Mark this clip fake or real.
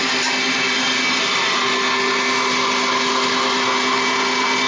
real